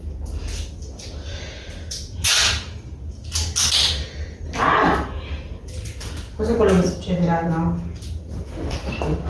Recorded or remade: recorded